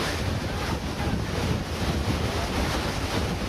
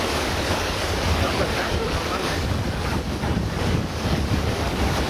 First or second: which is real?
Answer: first